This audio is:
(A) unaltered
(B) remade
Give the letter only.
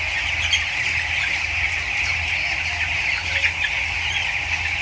A